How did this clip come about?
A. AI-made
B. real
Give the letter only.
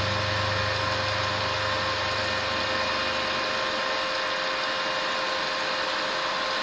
B